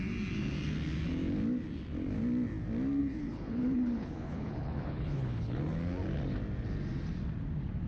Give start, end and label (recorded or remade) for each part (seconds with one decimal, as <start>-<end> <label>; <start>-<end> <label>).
0.0-3.0 recorded; 3.0-5.6 remade; 5.6-7.9 recorded